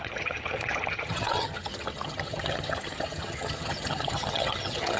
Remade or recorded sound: remade